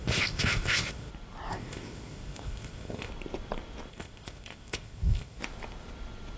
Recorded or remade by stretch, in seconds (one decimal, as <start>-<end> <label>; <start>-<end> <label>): 0.0-1.1 remade; 1.1-1.5 recorded; 1.5-3.1 remade; 3.1-3.9 recorded; 3.9-5.4 remade; 5.4-6.4 recorded